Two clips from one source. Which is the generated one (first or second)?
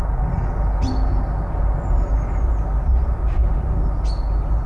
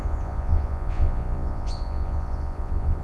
second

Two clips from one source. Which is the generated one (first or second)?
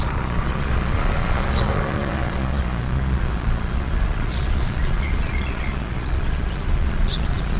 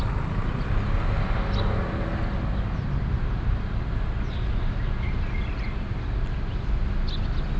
first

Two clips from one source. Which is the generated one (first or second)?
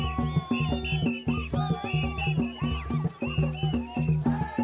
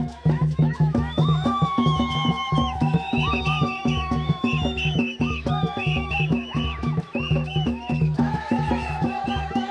second